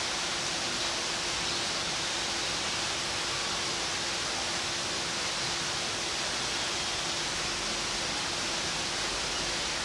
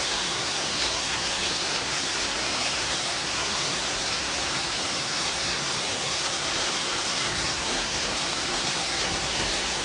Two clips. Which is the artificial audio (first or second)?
second